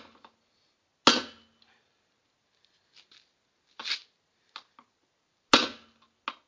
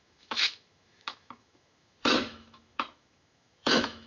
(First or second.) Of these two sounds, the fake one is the second